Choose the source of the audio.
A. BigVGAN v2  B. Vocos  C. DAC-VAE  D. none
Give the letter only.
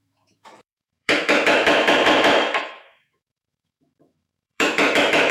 C